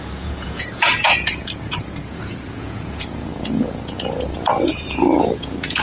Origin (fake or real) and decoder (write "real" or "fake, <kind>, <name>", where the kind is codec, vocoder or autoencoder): fake, vocoder, Vocos